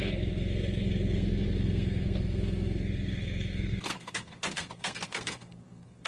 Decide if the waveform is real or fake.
fake